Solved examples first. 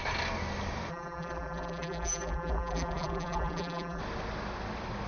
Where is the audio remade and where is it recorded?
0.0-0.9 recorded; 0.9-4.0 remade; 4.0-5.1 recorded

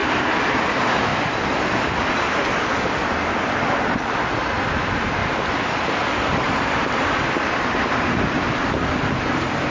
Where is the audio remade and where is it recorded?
0.0-0.6 remade; 0.6-5.2 recorded; 5.2-8.4 remade; 8.4-9.7 recorded

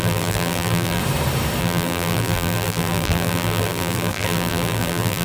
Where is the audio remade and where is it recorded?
0.0-1.0 remade; 1.0-1.6 recorded; 1.6-5.2 remade

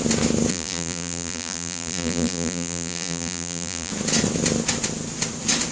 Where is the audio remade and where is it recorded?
0.0-0.5 recorded; 0.5-3.9 remade; 3.9-5.7 recorded